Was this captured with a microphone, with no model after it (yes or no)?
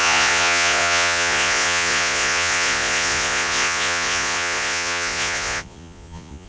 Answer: no